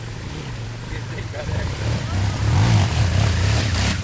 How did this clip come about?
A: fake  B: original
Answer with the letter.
B